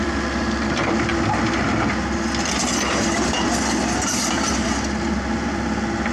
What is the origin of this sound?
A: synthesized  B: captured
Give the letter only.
A